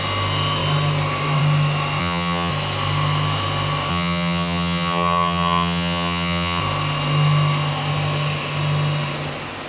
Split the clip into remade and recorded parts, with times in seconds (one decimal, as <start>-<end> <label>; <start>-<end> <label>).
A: 0.0-2.0 recorded; 2.0-2.5 remade; 2.5-3.9 recorded; 3.9-6.6 remade; 6.6-9.7 recorded